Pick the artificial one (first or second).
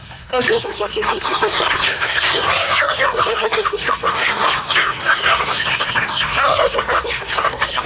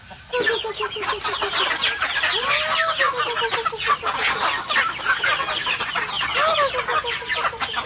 first